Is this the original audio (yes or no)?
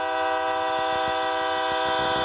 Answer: yes